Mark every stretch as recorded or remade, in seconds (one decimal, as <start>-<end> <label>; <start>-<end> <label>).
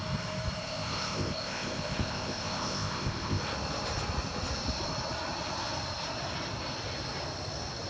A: 0.0-0.6 recorded; 0.6-3.4 remade; 3.4-7.9 recorded